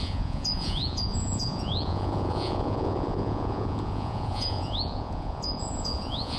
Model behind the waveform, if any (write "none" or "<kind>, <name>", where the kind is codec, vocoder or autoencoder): vocoder, Vocos